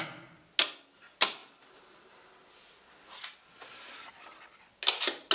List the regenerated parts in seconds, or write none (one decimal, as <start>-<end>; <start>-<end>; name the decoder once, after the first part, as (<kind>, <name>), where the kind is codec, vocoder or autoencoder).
none